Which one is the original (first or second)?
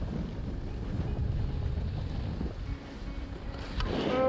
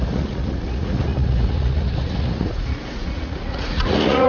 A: first